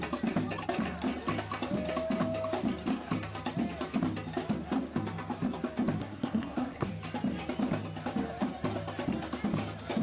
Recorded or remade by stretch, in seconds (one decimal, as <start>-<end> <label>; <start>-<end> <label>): 0.0-6.0 recorded; 6.0-6.9 remade; 6.9-10.0 recorded